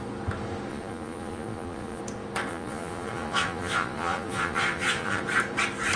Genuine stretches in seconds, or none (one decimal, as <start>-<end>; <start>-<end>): 0.0-0.7; 2.0-2.5; 5.2-6.0